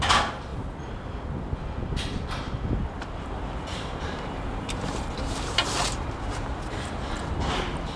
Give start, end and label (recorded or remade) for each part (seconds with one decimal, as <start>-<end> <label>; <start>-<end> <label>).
0.0-3.7 recorded; 3.7-6.1 remade; 6.1-8.0 recorded